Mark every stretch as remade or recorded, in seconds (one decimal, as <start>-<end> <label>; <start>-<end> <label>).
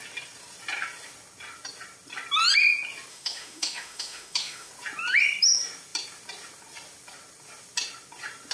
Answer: 0.0-3.1 recorded; 3.1-4.7 remade; 4.7-8.5 recorded